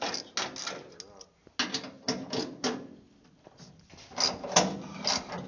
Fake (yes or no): no